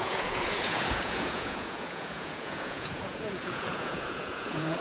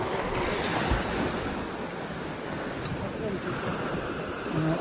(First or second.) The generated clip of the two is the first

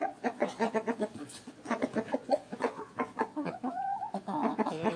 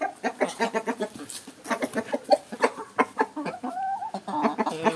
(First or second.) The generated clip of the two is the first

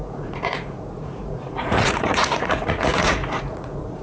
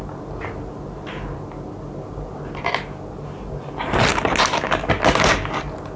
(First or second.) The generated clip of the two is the first